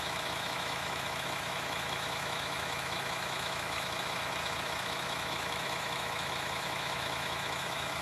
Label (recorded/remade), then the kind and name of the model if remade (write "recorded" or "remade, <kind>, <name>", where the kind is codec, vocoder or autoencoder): remade, autoencoder, DAC-VAE